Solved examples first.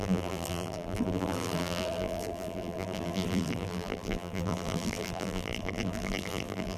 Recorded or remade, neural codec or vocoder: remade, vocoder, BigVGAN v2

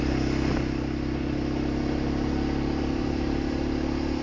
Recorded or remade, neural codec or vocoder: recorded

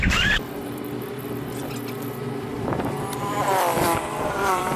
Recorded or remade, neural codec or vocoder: remade, vocoder, BigVGAN v2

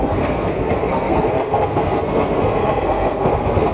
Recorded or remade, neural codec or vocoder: remade, codec, SNAC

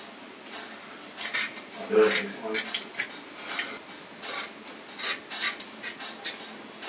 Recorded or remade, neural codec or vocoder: recorded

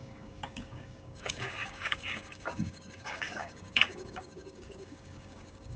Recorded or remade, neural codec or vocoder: remade, codec, DAC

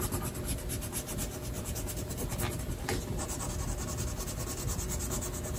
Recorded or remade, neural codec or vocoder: recorded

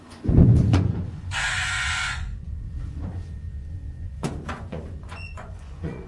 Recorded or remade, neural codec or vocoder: remade, vocoder, Vocos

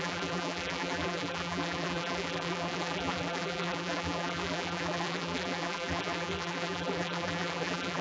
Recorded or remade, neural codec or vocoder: remade, vocoder, BigVGAN v2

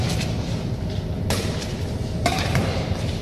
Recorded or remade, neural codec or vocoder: remade, vocoder, BigVGAN v2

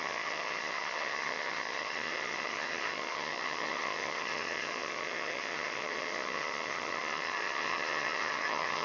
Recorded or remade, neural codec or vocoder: remade, vocoder, HiFi-GAN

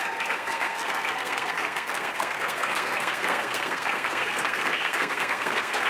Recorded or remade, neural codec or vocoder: remade, codec, SNAC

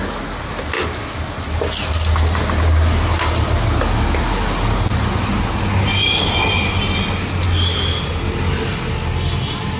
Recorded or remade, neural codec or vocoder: recorded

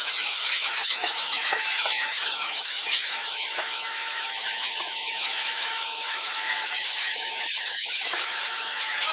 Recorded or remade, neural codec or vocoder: remade, autoencoder, DAC-VAE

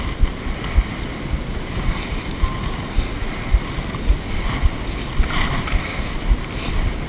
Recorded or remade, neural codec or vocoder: recorded